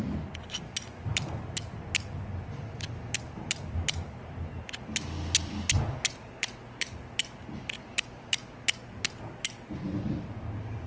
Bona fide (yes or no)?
yes